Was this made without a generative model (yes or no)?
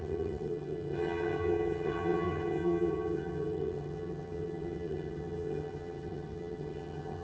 no